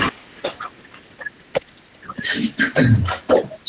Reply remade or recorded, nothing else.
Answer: recorded